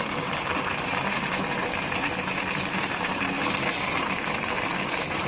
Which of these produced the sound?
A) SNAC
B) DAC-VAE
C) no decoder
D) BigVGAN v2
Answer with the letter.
D